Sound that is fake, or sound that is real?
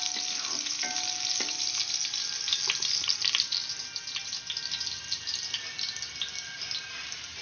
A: real